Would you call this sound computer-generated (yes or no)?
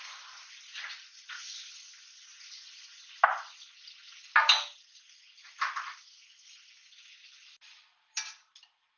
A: no